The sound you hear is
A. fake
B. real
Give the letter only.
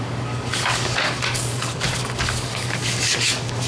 A